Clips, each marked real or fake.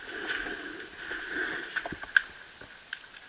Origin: real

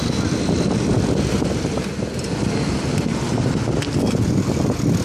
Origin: real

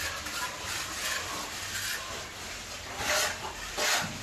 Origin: real